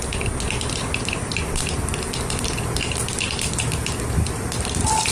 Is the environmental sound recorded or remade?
recorded